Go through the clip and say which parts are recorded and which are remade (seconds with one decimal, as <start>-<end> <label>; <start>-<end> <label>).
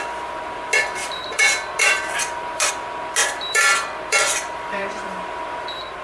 0.0-1.0 recorded; 1.0-2.7 remade; 2.7-3.2 recorded; 3.2-5.1 remade; 5.1-6.0 recorded